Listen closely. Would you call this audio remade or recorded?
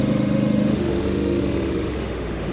remade